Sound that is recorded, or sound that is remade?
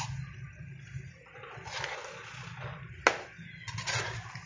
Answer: recorded